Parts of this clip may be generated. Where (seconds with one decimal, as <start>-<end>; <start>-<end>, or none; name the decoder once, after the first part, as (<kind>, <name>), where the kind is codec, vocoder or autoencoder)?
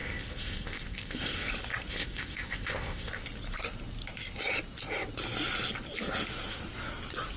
0.0-1.5 (codec, ZipCodec); 1.9-3.1